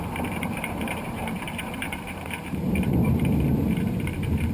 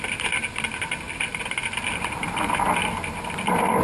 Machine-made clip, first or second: first